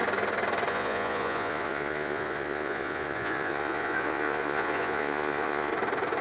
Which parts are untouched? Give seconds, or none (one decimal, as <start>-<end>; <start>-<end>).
0.0-0.7; 5.7-6.2